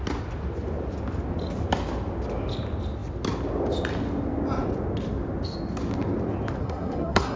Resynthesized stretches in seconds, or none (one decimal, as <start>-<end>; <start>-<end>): 6.6-7.4